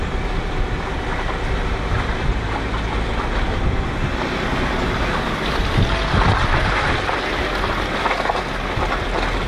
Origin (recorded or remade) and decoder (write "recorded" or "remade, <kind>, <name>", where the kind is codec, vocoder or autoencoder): recorded